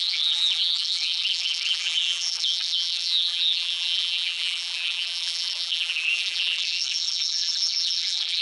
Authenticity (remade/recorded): remade